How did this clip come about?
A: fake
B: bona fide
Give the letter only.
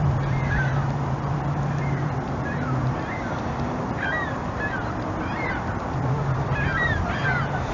A